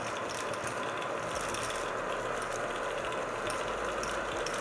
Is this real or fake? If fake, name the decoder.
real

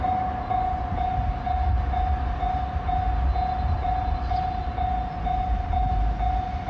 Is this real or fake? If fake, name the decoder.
real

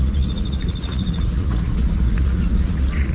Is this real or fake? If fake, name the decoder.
fake, vocoder, Vocos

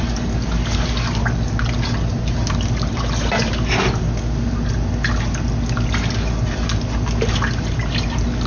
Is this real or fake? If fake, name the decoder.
real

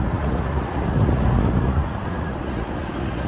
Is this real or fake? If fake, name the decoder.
fake, vocoder, Vocos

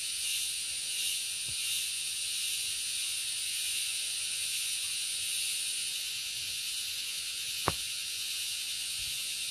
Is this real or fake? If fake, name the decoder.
fake, vocoder, Vocos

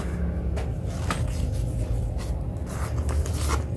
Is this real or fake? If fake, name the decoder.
real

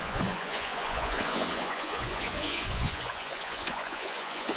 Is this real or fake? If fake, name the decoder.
fake, vocoder, Vocos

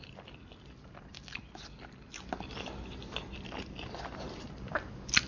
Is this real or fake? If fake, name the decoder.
real